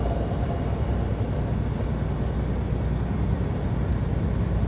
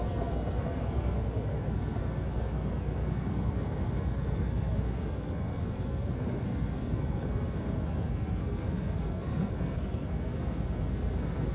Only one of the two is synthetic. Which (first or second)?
second